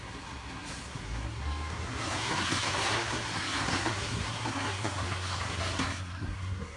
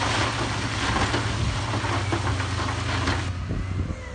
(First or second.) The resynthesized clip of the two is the first